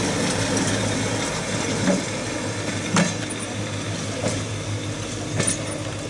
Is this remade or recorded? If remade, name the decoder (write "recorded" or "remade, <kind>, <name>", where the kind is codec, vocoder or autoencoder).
recorded